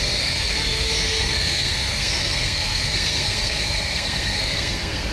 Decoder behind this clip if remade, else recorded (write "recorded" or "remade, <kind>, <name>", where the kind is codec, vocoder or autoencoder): remade, codec, SNAC